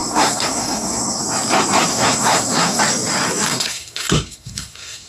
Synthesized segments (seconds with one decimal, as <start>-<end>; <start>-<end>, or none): 0.0-1.2; 1.9-2.8; 3.5-5.1